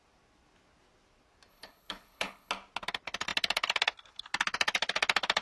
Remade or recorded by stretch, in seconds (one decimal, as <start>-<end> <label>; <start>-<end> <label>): 0.0-1.5 recorded; 1.5-2.5 remade; 2.5-5.4 recorded